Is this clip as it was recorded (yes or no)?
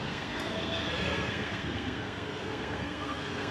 no